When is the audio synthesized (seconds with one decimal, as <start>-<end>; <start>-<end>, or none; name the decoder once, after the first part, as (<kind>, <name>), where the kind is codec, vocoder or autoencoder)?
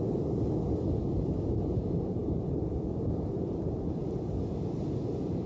none